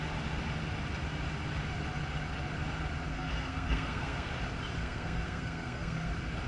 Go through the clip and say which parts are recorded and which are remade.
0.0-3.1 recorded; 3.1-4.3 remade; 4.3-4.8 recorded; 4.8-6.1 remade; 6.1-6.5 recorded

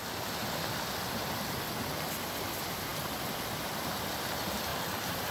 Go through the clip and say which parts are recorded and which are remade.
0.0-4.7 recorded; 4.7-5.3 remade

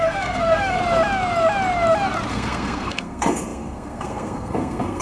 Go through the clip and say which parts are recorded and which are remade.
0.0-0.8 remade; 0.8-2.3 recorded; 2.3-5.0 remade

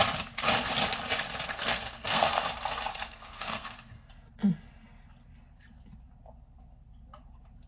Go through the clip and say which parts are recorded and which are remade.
0.0-1.5 recorded; 1.5-2.4 remade; 2.4-2.9 recorded; 2.9-4.1 remade; 4.1-7.7 recorded

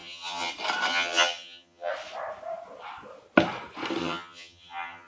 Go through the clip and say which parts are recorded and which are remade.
0.0-0.5 remade; 0.5-0.9 recorded; 0.9-1.9 remade; 1.9-4.0 recorded; 4.0-5.1 remade

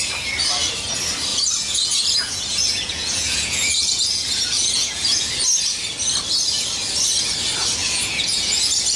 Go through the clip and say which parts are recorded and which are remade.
0.0-1.3 recorded; 1.3-5.3 remade; 5.3-7.8 recorded; 7.8-9.0 remade

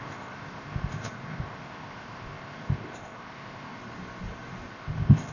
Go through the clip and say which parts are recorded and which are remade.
0.0-3.8 remade; 3.8-4.7 recorded; 4.7-5.3 remade